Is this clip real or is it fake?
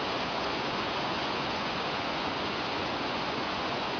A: fake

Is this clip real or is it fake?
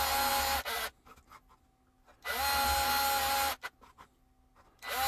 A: real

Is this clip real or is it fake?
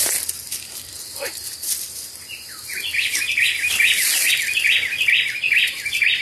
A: real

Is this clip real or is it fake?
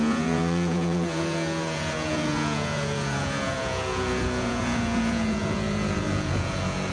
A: fake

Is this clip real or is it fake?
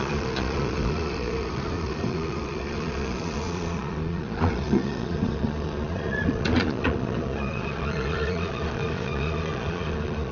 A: fake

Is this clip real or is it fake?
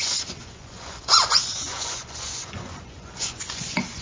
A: fake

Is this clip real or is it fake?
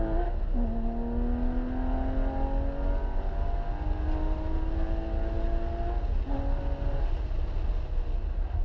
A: real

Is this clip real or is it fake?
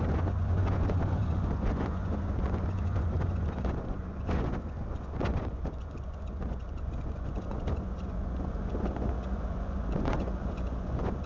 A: fake